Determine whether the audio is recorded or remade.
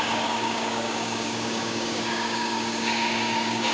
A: remade